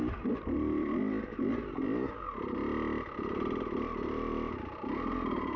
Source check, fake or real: real